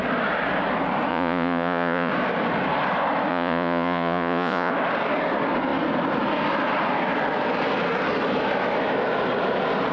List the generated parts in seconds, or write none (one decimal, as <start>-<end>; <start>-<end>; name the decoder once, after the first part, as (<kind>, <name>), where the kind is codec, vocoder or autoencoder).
1.1-2.1 (vocoder, Vocos); 3.3-4.7